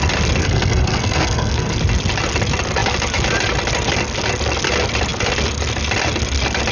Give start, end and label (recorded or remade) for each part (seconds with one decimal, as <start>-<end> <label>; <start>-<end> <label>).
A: 0.0-0.4 recorded; 0.4-1.8 remade; 1.8-6.7 recorded